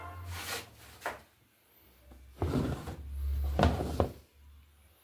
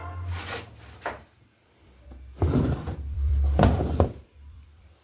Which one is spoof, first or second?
second